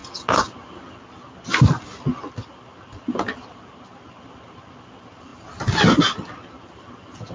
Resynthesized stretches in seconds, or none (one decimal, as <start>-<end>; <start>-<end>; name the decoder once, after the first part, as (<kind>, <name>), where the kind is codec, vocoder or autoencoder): none